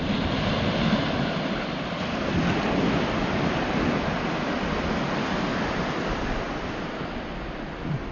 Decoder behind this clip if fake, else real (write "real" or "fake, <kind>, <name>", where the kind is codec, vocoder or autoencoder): real